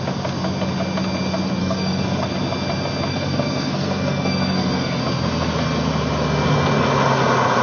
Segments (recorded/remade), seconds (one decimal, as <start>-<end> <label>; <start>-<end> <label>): 0.0-1.6 recorded; 1.6-2.3 remade; 2.3-3.1 recorded; 3.1-5.0 remade; 5.0-7.6 recorded